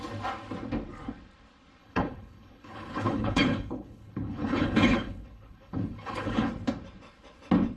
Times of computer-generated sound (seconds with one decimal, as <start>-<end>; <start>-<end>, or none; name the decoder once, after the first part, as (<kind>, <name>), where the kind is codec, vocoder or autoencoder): 1.8-6.5 (codec, HILCodec)